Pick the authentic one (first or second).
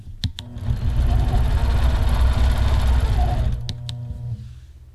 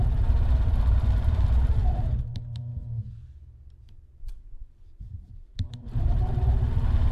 first